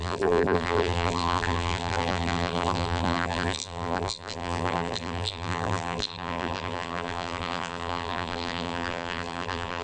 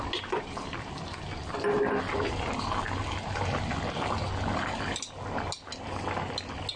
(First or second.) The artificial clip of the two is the first